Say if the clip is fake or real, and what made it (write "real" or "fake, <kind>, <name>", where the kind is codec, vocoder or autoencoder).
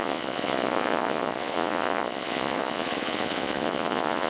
fake, vocoder, Vocos